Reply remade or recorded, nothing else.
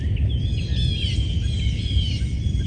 recorded